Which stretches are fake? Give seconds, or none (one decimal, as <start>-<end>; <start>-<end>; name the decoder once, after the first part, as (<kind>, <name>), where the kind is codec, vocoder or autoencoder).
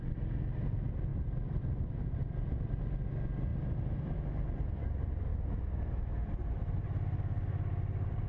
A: 1.1-2.8 (vocoder, BigVGAN v2); 3.5-5.5